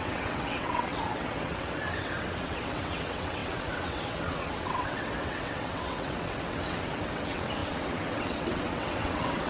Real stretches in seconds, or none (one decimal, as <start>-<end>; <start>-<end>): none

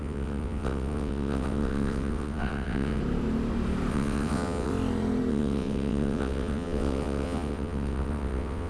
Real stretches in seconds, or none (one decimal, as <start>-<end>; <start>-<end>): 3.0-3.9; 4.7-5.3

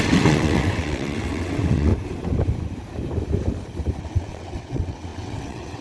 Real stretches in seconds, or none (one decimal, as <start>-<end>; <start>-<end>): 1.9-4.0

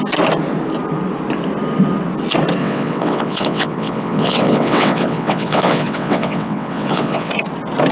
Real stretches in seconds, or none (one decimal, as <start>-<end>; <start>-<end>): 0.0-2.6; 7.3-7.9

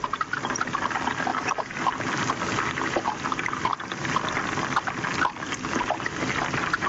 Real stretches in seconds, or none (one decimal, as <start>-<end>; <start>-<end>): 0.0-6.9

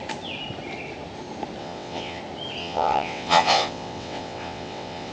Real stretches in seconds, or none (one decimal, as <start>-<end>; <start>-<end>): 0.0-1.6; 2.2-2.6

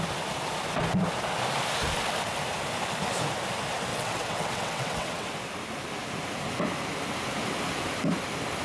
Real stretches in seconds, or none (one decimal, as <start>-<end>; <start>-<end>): 0.0-3.9; 5.3-8.6

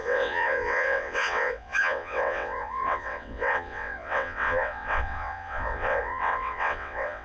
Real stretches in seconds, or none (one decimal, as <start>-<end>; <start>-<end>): none